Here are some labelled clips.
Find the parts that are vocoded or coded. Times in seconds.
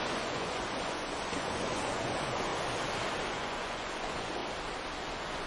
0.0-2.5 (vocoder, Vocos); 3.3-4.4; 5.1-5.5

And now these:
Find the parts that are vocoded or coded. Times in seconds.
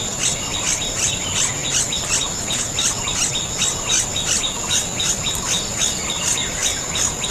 none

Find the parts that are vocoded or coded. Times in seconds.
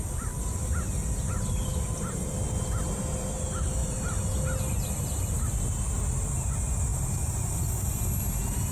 none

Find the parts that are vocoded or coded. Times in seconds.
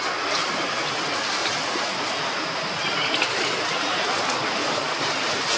0.4-1.0 (vocoder, BigVGAN v2); 1.4-1.9; 4.6-5.6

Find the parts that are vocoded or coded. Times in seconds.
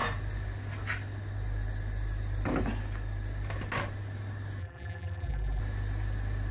4.6-5.6 (vocoder, BigVGAN v2)